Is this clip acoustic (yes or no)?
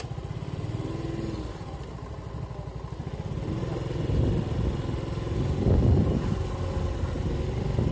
yes